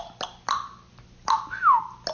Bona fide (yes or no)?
yes